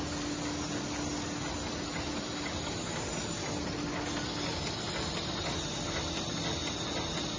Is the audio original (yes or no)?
yes